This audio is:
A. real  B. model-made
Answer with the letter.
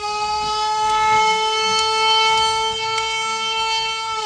B